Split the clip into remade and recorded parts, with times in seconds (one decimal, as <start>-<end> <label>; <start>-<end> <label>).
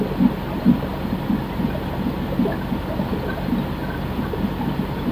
0.0-0.9 recorded; 0.9-1.6 remade; 1.6-5.1 recorded